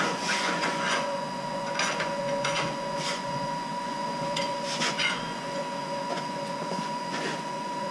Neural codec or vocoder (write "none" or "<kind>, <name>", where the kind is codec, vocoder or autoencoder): vocoder, Vocos